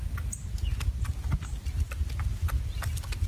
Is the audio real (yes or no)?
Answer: yes